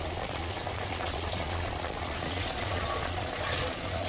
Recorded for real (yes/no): no